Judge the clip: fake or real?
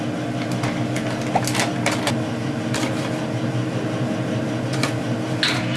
real